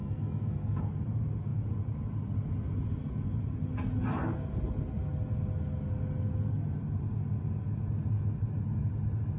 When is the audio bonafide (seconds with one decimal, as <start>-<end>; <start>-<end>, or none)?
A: 0.8-9.4